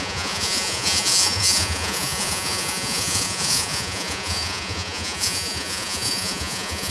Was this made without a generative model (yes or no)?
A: no